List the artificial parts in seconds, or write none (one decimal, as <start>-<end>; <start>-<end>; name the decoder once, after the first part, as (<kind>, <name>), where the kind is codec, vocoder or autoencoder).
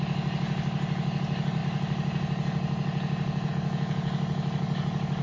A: none